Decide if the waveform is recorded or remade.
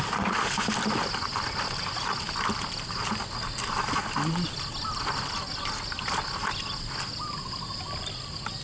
recorded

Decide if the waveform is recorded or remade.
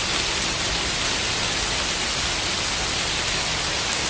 recorded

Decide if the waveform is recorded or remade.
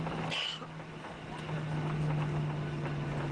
recorded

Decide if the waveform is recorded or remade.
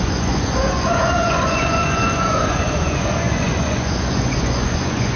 remade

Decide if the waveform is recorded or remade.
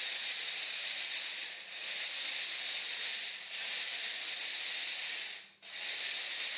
recorded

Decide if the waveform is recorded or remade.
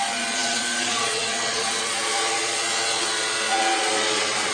remade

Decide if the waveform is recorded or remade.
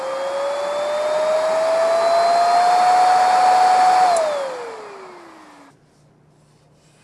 recorded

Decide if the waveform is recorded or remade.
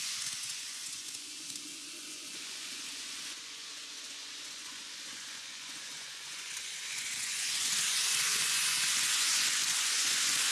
remade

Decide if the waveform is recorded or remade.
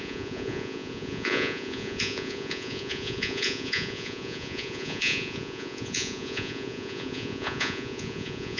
remade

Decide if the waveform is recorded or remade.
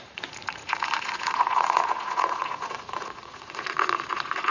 remade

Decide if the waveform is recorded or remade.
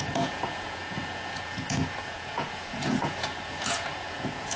remade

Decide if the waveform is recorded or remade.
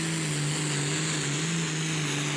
recorded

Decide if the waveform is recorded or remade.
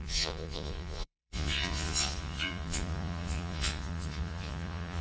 remade